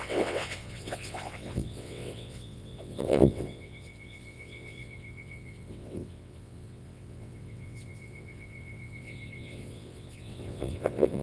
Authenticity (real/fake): fake